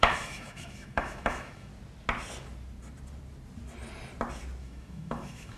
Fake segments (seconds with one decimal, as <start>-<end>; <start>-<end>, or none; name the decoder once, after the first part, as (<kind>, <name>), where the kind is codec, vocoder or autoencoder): 0.0-1.7 (autoencoder, DAC-VAE); 4.6-5.6